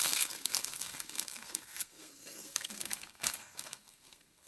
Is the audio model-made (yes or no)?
yes